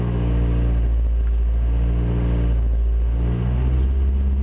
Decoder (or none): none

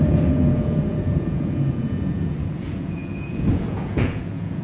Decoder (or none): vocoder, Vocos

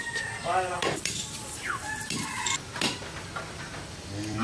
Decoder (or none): vocoder, BigVGAN v2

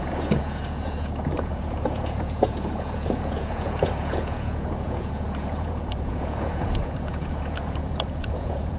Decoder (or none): vocoder, Vocos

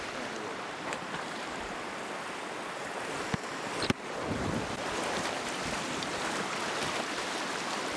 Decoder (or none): vocoder, BigVGAN v2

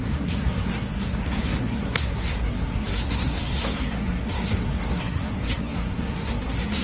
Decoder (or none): codec, SNAC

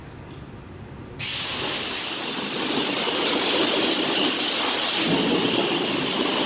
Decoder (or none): none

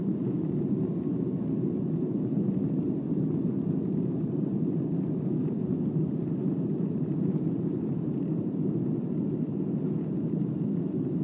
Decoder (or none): vocoder, BigVGAN v2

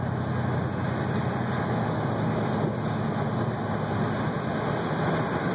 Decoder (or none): none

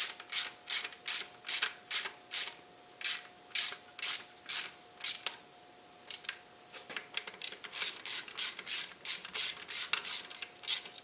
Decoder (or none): none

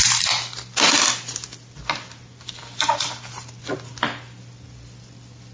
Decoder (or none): none